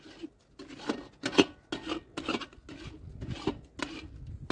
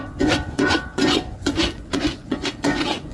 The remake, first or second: second